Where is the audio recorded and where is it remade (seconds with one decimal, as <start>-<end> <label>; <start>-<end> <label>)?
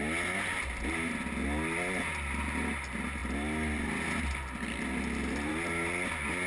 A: 0.0-6.5 recorded